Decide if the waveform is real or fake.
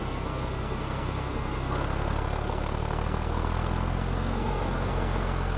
fake